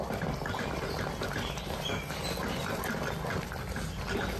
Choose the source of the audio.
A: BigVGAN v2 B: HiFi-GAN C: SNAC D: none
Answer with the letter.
D